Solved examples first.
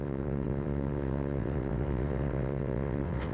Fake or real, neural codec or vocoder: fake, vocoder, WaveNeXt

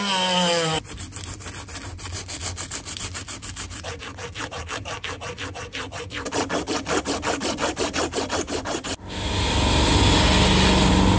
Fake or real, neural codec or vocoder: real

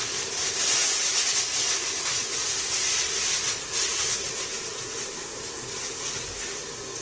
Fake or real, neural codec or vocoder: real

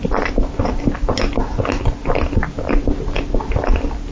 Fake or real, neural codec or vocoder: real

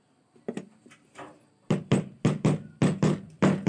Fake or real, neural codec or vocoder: real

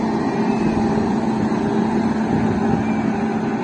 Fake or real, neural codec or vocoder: real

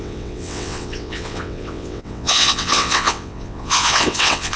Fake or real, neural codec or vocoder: fake, vocoder, WaveNeXt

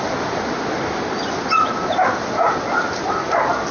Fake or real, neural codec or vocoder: real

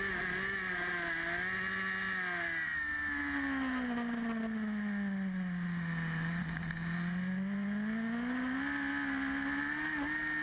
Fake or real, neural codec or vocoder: real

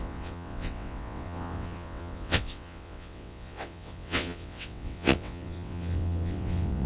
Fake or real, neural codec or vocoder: fake, vocoder, WaveNeXt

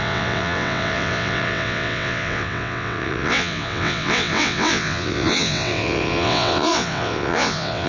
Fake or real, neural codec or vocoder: fake, vocoder, WaveNeXt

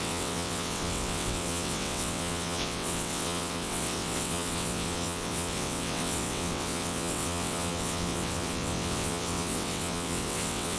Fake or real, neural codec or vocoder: fake, vocoder, WaveNeXt